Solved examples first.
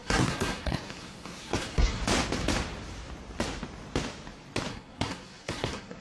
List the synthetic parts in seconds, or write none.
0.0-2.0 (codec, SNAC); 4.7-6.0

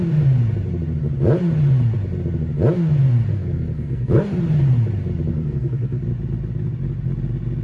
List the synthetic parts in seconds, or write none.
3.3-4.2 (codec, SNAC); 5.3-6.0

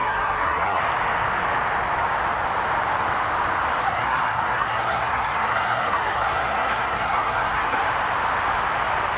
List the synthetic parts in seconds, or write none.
0.0-0.8 (codec, SNAC); 3.8-7.9

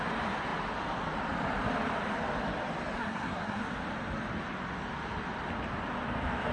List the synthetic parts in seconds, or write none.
3.0-3.6 (codec, SNAC)

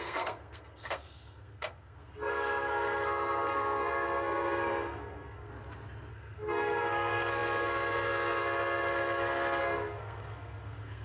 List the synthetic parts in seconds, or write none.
0.0-5.5 (codec, SNAC); 6.1-11.0